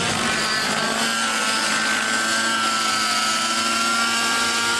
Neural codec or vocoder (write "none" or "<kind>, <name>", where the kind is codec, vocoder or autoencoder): none